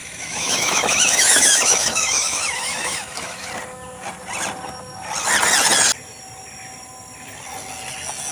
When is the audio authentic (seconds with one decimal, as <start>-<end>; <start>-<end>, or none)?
3.5-8.3